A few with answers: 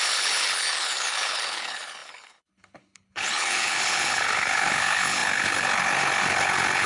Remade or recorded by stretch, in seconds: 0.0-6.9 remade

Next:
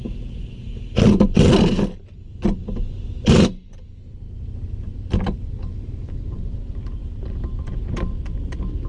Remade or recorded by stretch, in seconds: 0.0-8.9 recorded

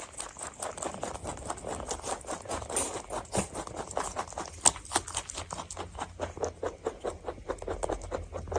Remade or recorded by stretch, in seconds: 0.0-8.6 recorded

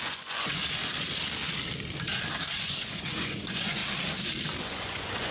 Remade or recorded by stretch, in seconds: 0.0-0.6 remade; 0.6-2.6 recorded; 2.6-3.8 remade; 3.8-4.6 recorded; 4.6-5.3 remade